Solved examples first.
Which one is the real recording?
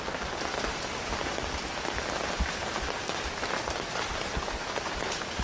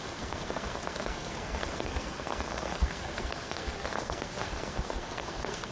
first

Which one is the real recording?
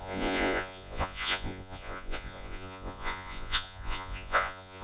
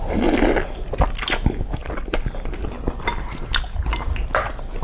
second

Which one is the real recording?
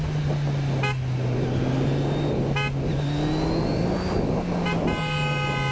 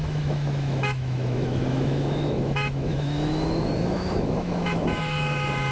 first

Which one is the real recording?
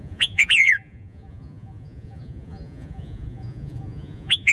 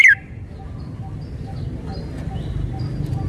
second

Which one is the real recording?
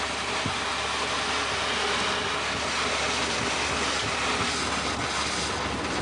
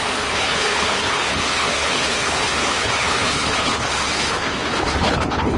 first